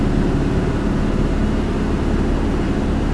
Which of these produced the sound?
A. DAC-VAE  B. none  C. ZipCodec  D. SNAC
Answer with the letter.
B